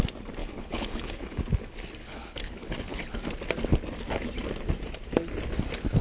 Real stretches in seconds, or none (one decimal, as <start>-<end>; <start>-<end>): 0.0-0.4; 1.4-2.0; 3.0-6.0